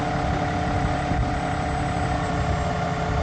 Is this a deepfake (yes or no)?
no